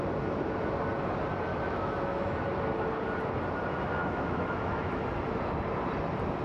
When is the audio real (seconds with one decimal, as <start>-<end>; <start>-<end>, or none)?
0.0-1.5; 2.3-4.0; 5.0-6.4